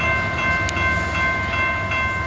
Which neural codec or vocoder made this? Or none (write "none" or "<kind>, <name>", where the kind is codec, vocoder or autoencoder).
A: none